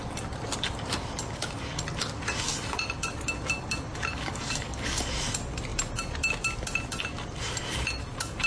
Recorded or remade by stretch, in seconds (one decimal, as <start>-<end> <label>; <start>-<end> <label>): 0.0-4.1 recorded; 4.1-5.1 remade; 5.1-8.5 recorded

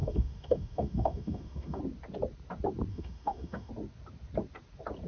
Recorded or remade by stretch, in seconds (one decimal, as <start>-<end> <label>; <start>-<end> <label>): 0.0-1.8 remade; 1.8-2.9 recorded; 2.9-3.7 remade; 3.7-5.1 recorded

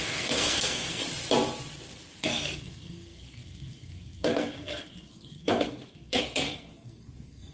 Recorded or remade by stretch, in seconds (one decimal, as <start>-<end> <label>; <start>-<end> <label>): 0.0-1.0 remade; 1.0-2.2 recorded; 2.2-7.5 remade

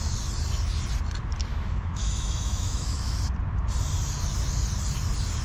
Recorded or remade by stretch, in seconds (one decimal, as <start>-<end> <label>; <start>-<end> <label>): 0.0-1.5 recorded; 1.5-3.2 remade; 3.2-5.4 recorded

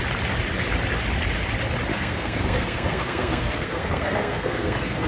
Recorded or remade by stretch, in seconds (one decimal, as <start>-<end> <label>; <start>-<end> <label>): 0.0-1.9 recorded; 1.9-5.1 remade